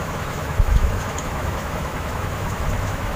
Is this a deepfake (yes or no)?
yes